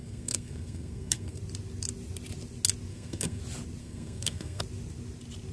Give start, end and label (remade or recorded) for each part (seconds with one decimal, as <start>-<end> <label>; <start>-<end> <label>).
0.0-1.4 remade; 1.4-2.9 recorded; 2.9-3.4 remade; 3.4-3.8 recorded; 3.8-4.6 remade; 4.6-5.5 recorded